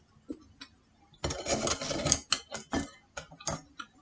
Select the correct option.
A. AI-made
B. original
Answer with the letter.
B